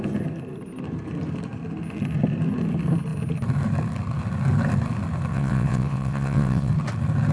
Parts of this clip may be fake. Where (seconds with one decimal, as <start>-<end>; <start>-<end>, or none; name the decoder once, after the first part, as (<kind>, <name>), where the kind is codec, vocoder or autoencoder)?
5.3-6.7 (vocoder, WaveNeXt)